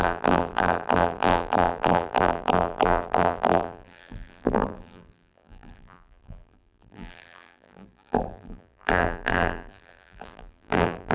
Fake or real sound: fake